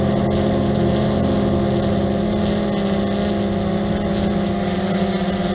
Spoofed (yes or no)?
no